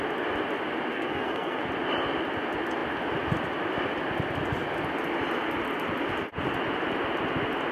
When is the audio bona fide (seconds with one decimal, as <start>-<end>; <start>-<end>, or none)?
0.0-0.9; 1.6-7.7